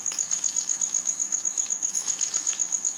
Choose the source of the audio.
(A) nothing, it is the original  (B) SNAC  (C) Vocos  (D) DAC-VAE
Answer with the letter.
D